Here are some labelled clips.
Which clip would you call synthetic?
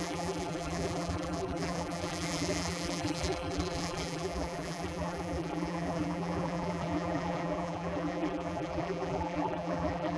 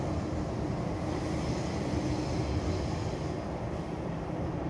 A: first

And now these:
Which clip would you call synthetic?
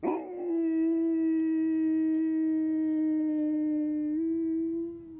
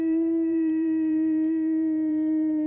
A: second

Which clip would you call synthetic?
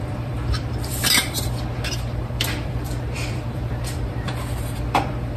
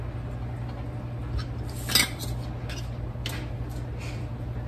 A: first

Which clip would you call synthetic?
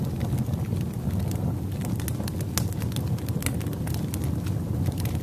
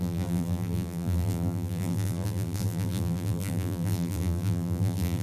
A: second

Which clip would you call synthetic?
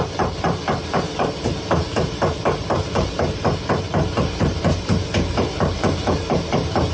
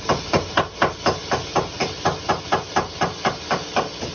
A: first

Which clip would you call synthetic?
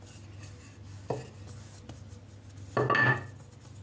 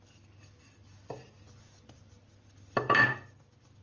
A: second